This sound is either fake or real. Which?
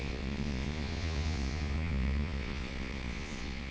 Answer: fake